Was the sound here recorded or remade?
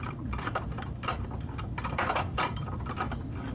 recorded